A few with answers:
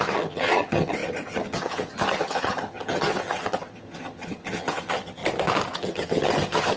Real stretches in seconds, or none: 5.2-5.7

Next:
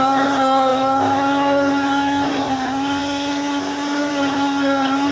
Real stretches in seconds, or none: none

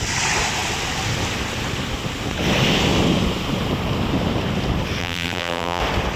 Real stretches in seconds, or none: 0.0-5.0; 5.8-6.2